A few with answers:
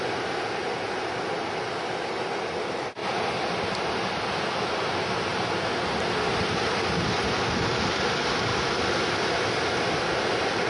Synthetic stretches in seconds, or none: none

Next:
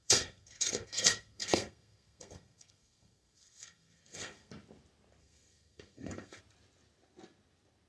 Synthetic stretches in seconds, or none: 0.0-4.5 (codec, SNAC); 5.2-6.4